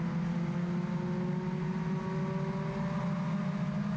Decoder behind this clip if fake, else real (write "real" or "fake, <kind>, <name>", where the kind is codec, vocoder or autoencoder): real